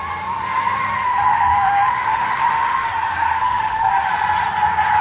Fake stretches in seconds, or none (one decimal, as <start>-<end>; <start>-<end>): 1.1-2.9; 3.4-3.9